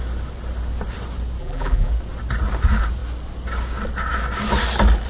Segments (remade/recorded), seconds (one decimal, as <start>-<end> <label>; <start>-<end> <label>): 0.0-1.4 recorded; 1.4-1.9 remade; 1.9-5.1 recorded